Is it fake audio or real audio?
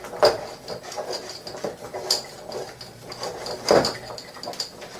real